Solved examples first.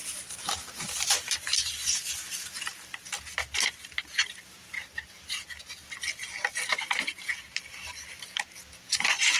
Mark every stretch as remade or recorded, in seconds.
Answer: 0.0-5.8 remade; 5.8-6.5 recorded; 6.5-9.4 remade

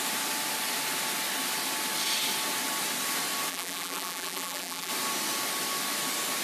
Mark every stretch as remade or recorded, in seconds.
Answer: 0.0-3.5 recorded; 3.5-4.9 remade; 4.9-6.4 recorded

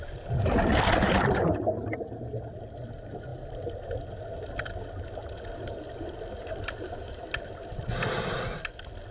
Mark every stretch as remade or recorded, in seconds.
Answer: 0.0-6.4 recorded; 6.4-7.2 remade; 7.2-9.1 recorded

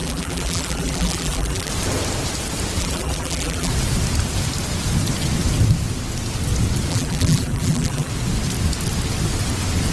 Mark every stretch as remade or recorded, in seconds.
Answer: 0.0-1.7 remade; 1.7-2.8 recorded; 2.8-3.7 remade; 3.7-6.9 recorded; 6.9-8.1 remade; 8.1-9.9 recorded

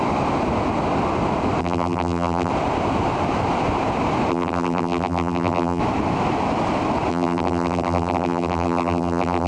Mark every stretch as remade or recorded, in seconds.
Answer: 0.0-1.6 recorded; 1.6-2.5 remade; 2.5-4.3 recorded; 4.3-5.8 remade; 5.8-7.1 recorded; 7.1-9.5 remade

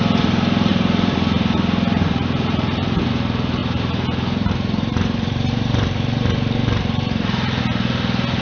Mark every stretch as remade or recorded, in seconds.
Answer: 0.0-0.7 recorded; 0.7-3.1 remade; 3.1-3.6 recorded; 3.6-7.6 remade; 7.6-8.4 recorded

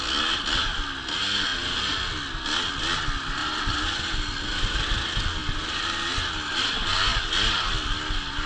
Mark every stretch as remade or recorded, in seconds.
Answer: 0.0-3.4 recorded; 3.4-4.2 remade; 4.2-8.5 recorded